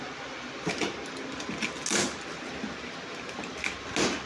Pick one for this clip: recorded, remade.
recorded